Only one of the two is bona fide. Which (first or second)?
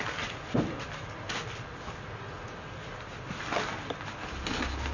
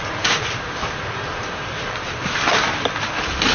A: first